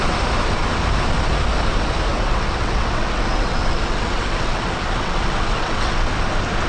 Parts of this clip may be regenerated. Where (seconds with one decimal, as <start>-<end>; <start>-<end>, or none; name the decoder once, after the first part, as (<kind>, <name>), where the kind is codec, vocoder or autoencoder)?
2.1-6.1 (vocoder, WaveNeXt)